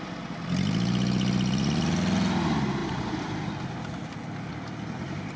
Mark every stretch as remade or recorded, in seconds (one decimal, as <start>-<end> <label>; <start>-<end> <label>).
0.0-5.4 recorded